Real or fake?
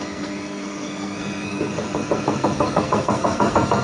fake